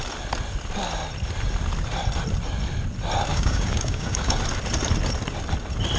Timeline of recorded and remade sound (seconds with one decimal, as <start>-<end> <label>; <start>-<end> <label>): 0.0-3.3 recorded; 3.3-4.4 remade; 4.4-6.0 recorded